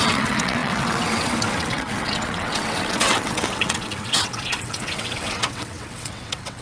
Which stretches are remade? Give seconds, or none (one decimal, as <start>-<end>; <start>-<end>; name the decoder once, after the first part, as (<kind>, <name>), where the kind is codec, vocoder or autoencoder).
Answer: 0.0-6.6 (vocoder, WaveNeXt)